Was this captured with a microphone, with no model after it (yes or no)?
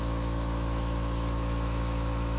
no